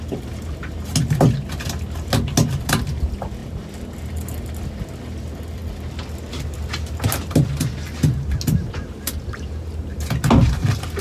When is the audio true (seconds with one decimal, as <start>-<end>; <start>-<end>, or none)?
0.0-11.0